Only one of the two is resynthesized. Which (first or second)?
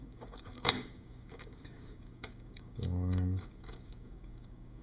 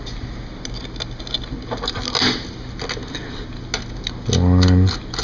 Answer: first